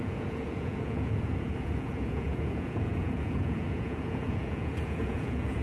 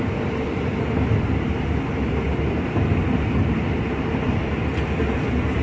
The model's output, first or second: first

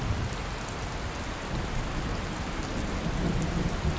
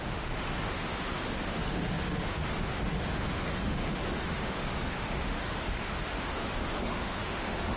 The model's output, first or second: second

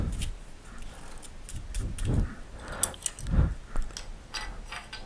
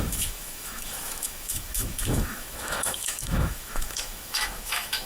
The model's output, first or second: second